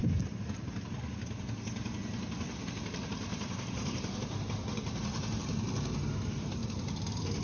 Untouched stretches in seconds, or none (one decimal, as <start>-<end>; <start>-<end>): 0.0-3.3; 5.4-7.4